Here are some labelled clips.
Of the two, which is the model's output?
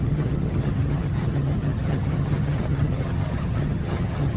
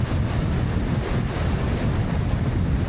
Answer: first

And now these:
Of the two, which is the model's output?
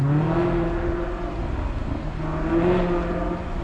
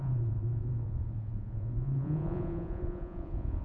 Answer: second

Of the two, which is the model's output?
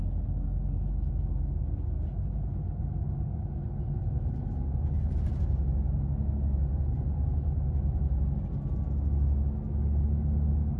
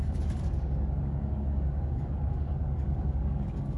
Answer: second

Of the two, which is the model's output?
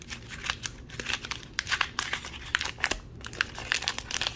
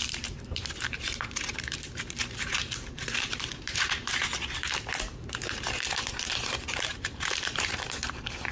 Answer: second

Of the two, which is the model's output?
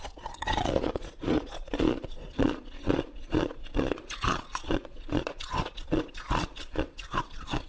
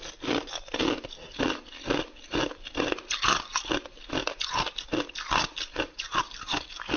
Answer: first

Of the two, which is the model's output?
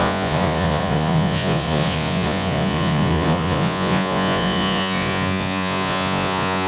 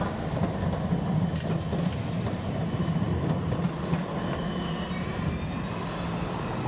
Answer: first